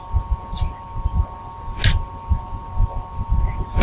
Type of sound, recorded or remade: recorded